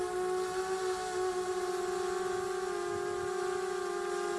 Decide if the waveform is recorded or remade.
recorded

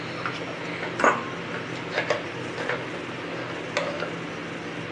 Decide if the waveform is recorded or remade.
recorded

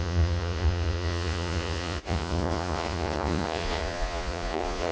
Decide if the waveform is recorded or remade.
remade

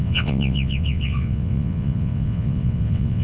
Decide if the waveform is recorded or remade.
remade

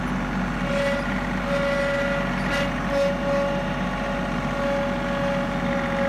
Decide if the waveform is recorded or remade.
recorded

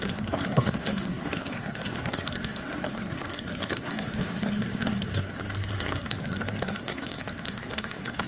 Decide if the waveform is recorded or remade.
remade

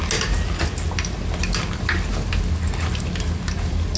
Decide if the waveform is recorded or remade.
recorded